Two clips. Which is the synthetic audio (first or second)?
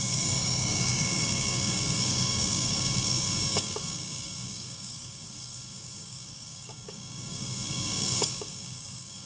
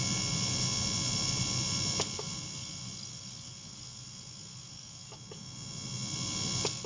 first